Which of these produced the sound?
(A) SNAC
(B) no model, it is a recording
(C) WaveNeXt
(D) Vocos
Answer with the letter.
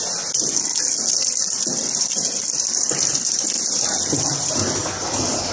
B